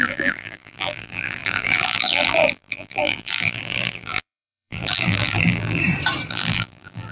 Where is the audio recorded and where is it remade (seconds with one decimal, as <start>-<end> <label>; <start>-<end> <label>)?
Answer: 0.0-5.8 remade; 5.8-6.3 recorded; 6.3-7.1 remade